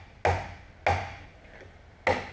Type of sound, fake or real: real